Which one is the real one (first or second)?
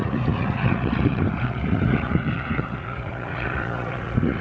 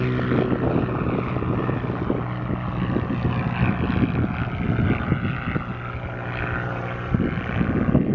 second